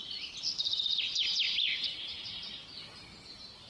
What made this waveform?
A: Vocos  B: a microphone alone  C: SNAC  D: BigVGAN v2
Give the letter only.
B